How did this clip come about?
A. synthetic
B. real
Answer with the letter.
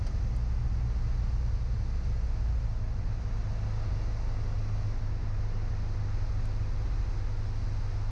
B